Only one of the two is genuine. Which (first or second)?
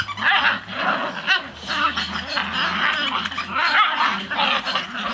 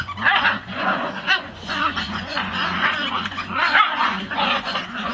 first